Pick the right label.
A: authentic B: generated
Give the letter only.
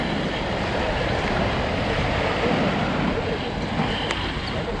A